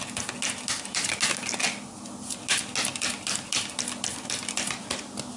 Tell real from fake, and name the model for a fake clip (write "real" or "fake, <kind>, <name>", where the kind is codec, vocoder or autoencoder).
real